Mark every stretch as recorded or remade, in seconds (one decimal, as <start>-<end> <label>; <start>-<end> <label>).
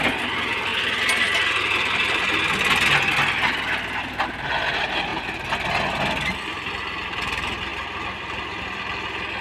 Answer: 0.0-9.4 recorded